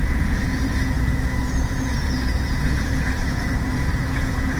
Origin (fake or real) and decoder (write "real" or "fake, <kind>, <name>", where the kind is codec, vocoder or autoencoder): fake, vocoder, Vocos